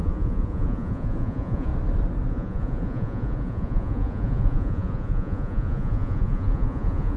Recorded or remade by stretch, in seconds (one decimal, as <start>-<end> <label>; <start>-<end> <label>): 0.0-1.7 remade; 1.7-2.3 recorded; 2.3-7.2 remade